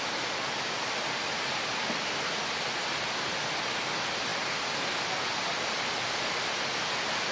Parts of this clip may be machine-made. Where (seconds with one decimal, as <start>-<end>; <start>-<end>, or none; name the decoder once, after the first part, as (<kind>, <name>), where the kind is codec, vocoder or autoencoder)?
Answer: none